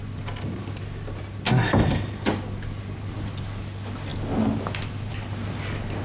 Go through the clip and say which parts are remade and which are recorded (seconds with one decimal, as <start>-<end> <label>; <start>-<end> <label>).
0.0-6.0 recorded